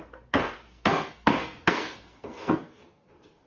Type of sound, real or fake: fake